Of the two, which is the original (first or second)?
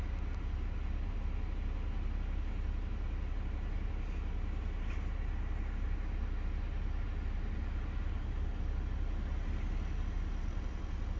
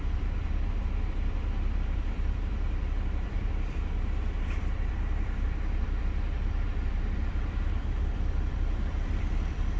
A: first